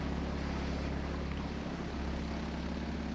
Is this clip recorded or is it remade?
recorded